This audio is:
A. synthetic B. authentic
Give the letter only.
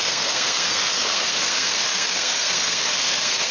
A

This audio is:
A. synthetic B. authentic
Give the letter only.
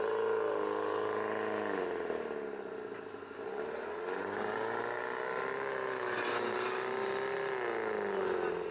B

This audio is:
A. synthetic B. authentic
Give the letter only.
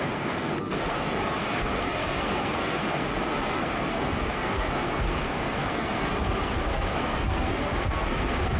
A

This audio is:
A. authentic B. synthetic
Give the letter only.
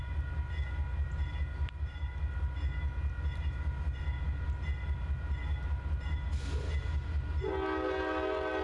A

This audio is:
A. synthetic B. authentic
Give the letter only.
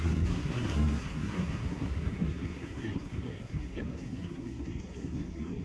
A